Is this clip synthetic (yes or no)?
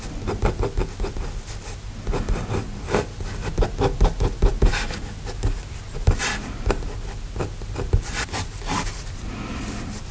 no